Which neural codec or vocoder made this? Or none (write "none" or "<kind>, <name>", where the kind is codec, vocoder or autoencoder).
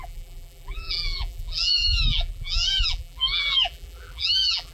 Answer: vocoder, BigVGAN v2